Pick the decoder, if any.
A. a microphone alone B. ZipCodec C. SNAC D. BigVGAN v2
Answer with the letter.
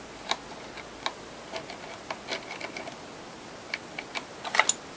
A